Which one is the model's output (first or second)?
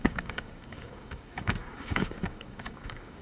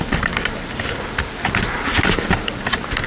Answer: first